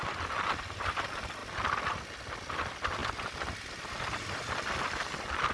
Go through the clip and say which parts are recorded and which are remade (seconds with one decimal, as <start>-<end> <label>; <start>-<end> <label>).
0.0-5.5 recorded